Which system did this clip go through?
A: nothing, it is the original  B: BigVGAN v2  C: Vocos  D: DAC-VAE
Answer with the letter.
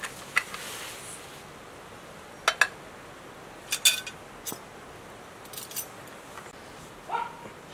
A